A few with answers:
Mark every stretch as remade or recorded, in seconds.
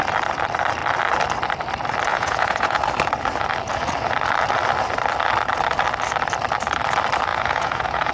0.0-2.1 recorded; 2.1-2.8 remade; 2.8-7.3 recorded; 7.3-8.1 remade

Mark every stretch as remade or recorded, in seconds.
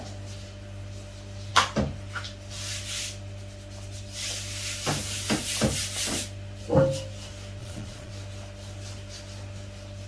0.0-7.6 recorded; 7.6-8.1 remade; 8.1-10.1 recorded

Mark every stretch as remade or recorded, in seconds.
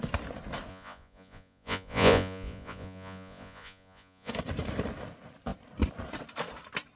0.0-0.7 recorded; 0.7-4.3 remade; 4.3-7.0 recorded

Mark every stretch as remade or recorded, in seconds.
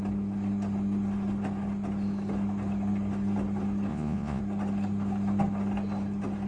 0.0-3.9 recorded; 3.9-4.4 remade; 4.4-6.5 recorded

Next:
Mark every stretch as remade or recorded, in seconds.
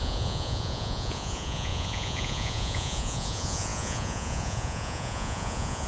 0.0-5.9 remade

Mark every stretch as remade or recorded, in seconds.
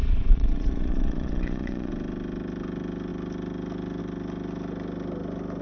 0.0-1.9 remade; 1.9-5.6 recorded